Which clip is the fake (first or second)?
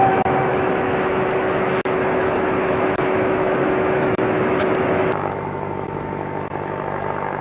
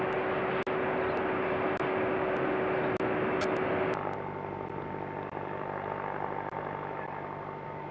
first